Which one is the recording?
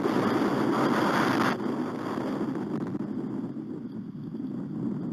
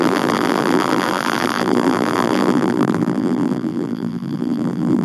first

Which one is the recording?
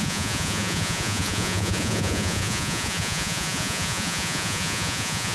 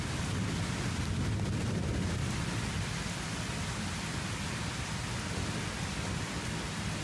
second